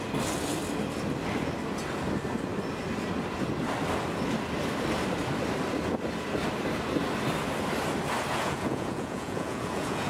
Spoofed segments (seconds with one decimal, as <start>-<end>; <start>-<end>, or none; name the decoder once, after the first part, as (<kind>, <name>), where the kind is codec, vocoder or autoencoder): 8.3-10.1 (vocoder, Vocos)